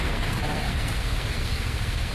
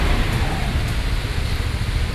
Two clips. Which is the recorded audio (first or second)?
second